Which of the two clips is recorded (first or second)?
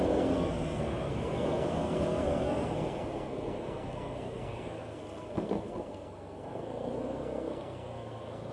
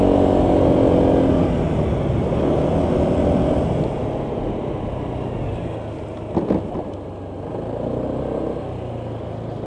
second